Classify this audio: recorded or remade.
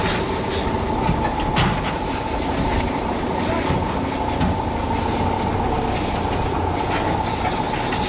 recorded